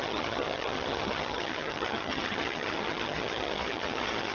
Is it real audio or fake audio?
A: fake